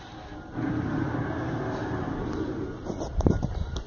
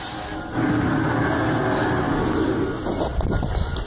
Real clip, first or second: second